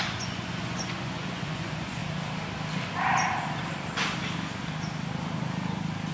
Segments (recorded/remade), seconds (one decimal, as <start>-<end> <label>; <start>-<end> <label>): 0.0-2.0 remade; 2.0-6.1 recorded